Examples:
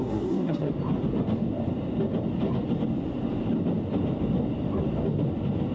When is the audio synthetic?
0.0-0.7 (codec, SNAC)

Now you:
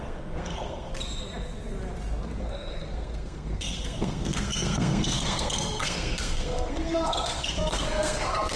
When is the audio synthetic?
0.0-0.9 (codec, SNAC); 2.4-8.6

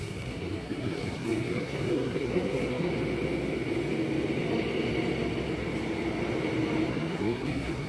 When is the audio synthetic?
0.0-2.9 (codec, SNAC); 6.9-7.9

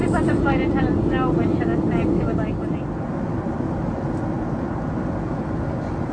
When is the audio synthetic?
none

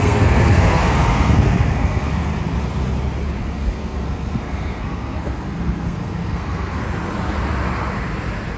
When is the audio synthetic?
0.0-2.3 (codec, SNAC); 3.4-6.8

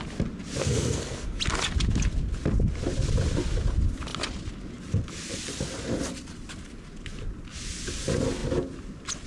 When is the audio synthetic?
0.6-1.4 (codec, SNAC)

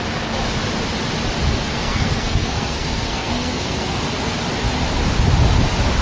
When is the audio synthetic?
1.7-4.0 (codec, SNAC)